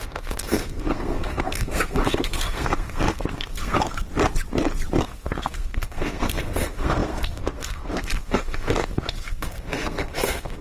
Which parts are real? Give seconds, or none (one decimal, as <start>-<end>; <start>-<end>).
4.1-5.0